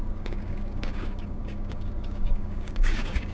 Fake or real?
fake